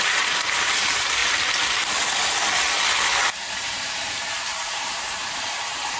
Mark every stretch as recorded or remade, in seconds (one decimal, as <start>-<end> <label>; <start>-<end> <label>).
0.0-1.2 remade; 1.2-3.6 recorded; 3.6-6.0 remade